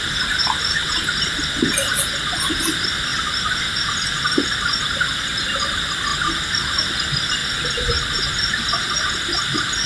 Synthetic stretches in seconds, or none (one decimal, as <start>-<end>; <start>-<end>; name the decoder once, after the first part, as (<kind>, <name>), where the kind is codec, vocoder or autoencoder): none